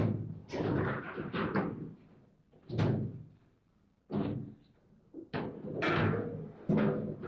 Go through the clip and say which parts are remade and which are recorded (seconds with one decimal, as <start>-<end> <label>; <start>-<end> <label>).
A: 0.0-7.3 recorded